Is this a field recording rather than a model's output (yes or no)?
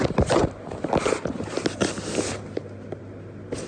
yes